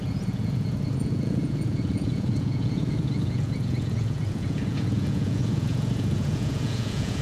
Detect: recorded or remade remade